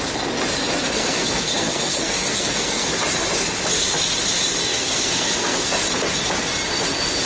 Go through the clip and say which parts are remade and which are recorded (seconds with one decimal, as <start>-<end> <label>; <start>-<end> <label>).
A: 0.0-0.8 recorded; 0.8-2.9 remade; 2.9-4.6 recorded; 4.6-5.8 remade; 5.8-7.3 recorded